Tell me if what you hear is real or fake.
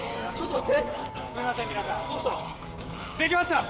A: fake